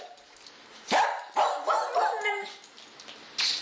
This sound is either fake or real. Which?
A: real